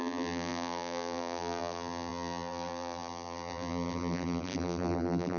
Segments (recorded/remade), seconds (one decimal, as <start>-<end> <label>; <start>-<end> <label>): 0.0-5.4 remade